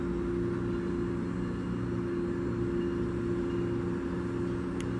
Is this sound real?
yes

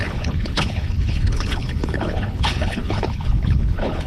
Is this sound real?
no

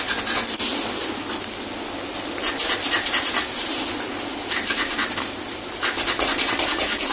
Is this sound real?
yes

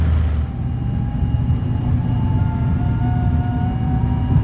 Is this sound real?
yes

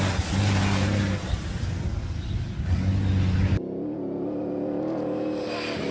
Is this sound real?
yes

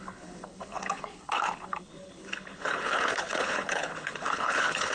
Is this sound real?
no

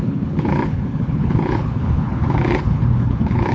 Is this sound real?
no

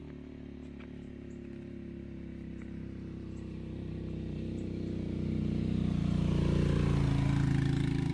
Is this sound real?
yes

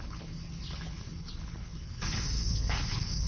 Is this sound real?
no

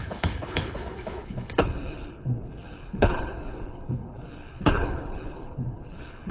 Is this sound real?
no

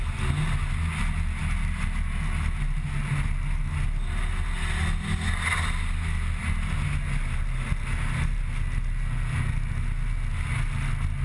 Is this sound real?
yes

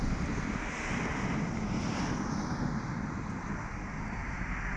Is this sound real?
yes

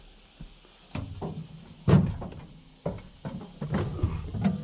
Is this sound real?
yes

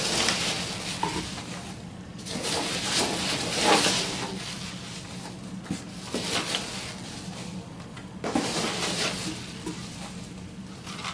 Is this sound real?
yes